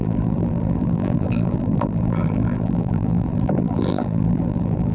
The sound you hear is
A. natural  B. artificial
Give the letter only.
B